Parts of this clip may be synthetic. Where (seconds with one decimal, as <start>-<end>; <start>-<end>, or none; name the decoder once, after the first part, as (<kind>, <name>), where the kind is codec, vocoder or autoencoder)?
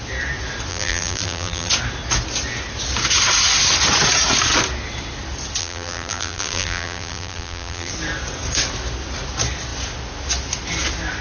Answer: 0.7-1.7 (vocoder, BigVGAN v2); 5.6-7.9